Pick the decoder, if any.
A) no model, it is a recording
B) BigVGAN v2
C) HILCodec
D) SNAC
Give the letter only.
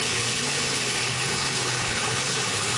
C